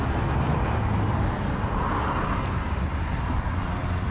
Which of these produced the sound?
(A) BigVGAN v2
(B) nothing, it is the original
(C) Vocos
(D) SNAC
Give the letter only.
B